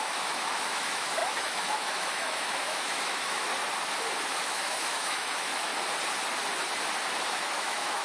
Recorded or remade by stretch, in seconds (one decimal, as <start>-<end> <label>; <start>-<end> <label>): 0.0-3.5 remade; 3.5-4.3 recorded; 4.3-5.7 remade; 5.7-7.3 recorded; 7.3-8.0 remade